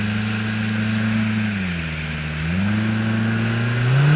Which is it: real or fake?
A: real